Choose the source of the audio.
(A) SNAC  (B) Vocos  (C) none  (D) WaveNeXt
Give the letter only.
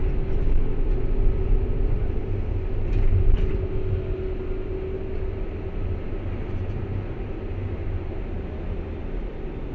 C